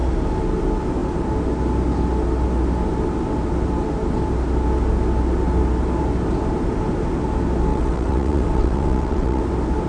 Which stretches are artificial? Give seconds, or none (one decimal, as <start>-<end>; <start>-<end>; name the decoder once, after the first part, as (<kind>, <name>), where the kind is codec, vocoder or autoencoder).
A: 7.7-9.4 (vocoder, WaveNeXt)